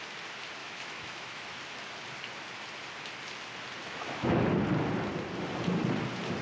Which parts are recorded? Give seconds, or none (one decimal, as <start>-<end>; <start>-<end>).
0.0-0.6; 1.6-3.8; 4.4-6.4